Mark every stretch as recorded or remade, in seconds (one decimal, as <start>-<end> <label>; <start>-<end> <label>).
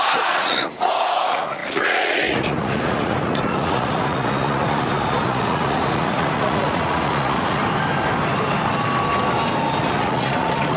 0.0-7.6 remade; 7.6-9.8 recorded; 9.8-10.8 remade